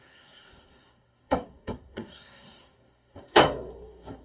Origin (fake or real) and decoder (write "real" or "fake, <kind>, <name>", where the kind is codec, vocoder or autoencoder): fake, codec, SNAC